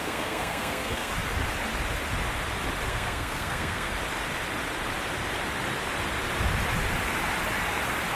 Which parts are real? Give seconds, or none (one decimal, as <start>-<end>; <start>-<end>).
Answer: 1.1-2.9; 3.9-8.2